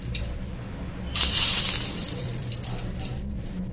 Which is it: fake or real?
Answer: fake